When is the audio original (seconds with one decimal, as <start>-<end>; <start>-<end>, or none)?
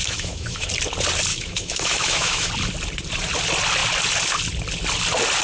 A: 0.7-1.3; 2.5-5.4